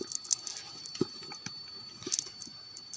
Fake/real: real